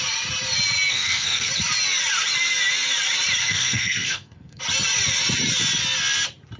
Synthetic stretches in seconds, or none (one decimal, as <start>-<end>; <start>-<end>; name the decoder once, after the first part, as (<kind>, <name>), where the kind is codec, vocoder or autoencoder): 0.9-1.5 (codec, SNAC); 3.4-4.6